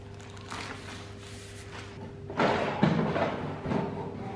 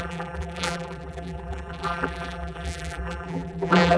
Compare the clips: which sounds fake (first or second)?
second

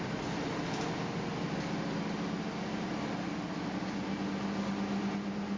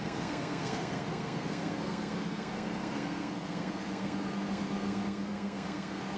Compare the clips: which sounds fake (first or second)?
second